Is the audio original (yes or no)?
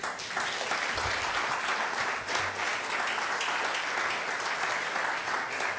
yes